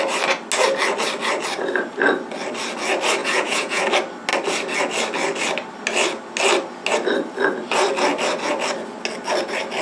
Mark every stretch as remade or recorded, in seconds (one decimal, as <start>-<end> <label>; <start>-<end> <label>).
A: 0.0-3.2 recorded; 3.2-3.8 remade; 3.8-9.8 recorded